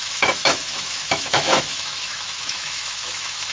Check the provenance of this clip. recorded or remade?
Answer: remade